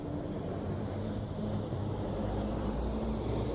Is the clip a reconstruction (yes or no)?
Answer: yes